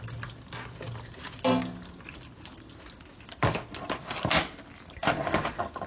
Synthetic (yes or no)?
no